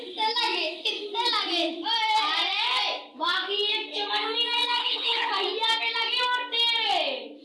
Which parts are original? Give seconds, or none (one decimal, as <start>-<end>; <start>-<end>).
0.0-4.8; 5.3-7.4